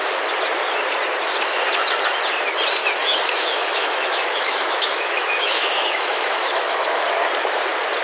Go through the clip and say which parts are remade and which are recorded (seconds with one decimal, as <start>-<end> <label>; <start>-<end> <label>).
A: 0.0-2.8 recorded; 2.8-7.0 remade; 7.0-8.0 recorded